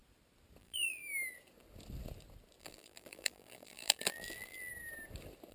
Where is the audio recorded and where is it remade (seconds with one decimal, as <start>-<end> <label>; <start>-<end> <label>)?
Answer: 0.0-0.6 recorded; 0.6-1.0 remade; 1.0-2.6 recorded; 2.6-4.7 remade; 4.7-5.5 recorded